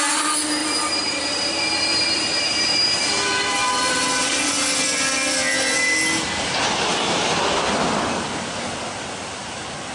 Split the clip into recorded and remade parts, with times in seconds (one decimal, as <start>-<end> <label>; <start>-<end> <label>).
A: 0.0-0.6 recorded; 0.6-4.5 remade; 4.5-9.9 recorded